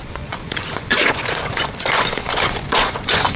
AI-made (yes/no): yes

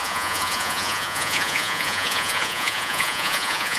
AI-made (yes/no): yes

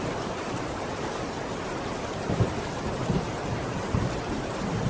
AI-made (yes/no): no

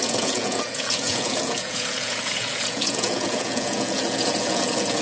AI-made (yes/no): yes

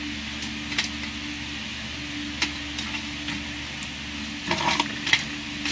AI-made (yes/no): no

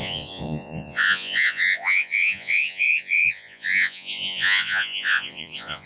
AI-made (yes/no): yes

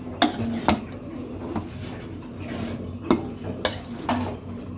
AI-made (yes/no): no